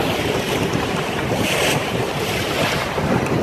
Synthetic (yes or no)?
yes